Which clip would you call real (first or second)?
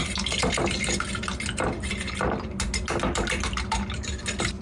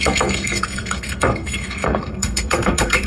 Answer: first